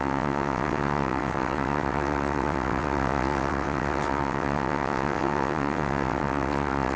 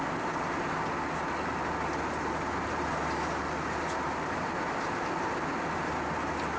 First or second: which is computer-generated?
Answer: first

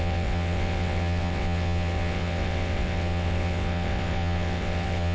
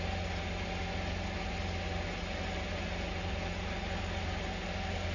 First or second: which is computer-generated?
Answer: first